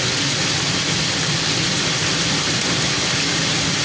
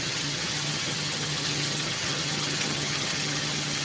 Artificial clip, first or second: second